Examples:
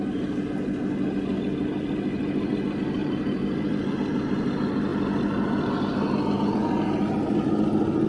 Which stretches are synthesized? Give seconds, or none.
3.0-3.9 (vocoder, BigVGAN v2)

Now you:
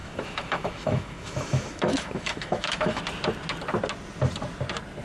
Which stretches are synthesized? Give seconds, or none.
0.0-3.0 (autoencoder, DAC-VAE)

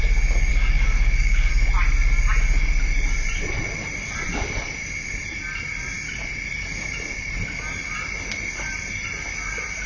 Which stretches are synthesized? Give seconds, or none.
0.5-1.5 (codec, DAC)

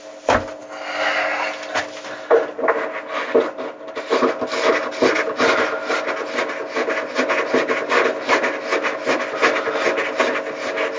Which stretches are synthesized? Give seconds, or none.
none

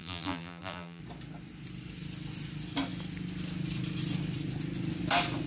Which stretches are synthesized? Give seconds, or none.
0.0-1.0 (vocoder, BigVGAN v2)

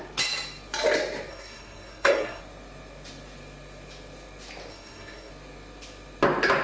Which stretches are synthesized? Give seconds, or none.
1.3-2.4 (codec, SNAC); 4.7-5.3

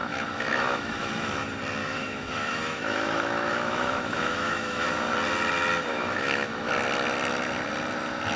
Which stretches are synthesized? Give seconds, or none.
0.0-1.3 (autoencoder, DAC-VAE); 1.8-4.9; 5.9-6.7